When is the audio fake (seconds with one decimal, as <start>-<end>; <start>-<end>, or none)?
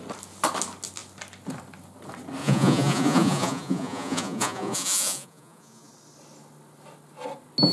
2.4-5.9